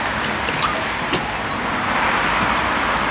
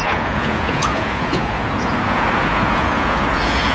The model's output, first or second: second